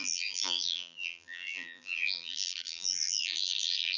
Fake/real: fake